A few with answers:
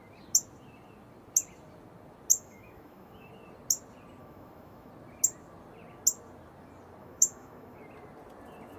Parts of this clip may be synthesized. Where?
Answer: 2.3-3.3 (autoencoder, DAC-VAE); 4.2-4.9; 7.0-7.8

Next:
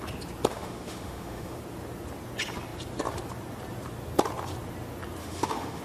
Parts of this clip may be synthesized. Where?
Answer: 0.5-1.6 (autoencoder, DAC-VAE); 5.2-5.8

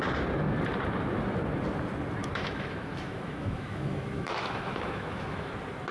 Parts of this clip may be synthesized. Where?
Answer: 2.2-5.5 (autoencoder, DAC-VAE)

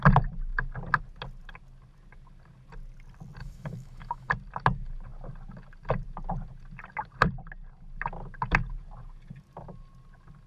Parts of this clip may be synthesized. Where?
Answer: 3.4-4.3 (autoencoder, DAC-VAE)

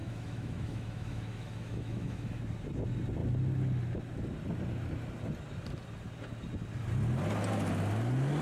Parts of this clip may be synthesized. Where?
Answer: 0.0-2.4 (autoencoder, DAC-VAE)

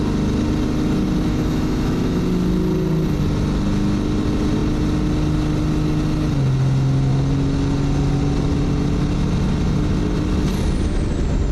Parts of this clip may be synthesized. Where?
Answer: 1.3-2.2 (autoencoder, DAC-VAE)

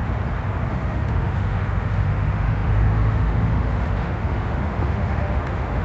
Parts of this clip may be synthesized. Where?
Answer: 0.7-5.8 (autoencoder, DAC-VAE)

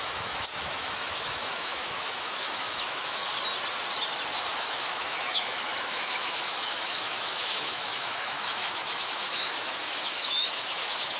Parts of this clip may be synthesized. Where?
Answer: 0.0-3.2 (autoencoder, DAC-VAE); 4.6-11.2